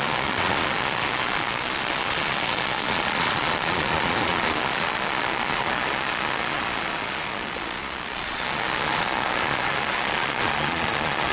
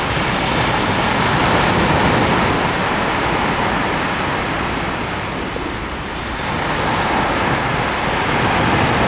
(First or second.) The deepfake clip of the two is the first